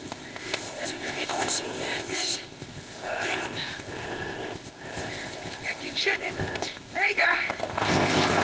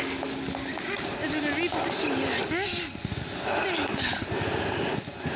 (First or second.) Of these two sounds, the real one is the second